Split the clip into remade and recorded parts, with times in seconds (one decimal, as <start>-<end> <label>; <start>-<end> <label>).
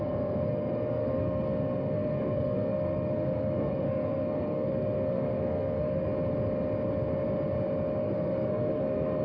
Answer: 0.0-6.1 remade; 6.1-8.0 recorded; 8.0-9.2 remade